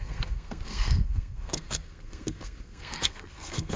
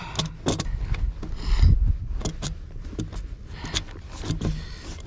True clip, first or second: second